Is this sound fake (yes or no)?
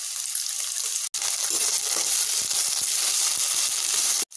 no